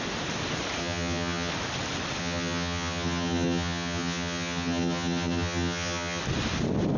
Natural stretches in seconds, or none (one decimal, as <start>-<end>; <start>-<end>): 0.0-0.8; 1.5-2.2; 6.2-7.0